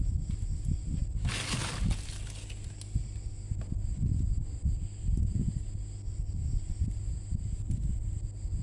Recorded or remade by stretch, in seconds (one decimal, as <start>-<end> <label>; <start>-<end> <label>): 0.0-8.6 recorded